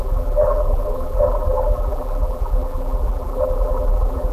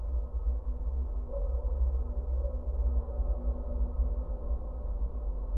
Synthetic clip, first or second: first